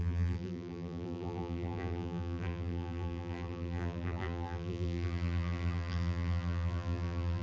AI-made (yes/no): yes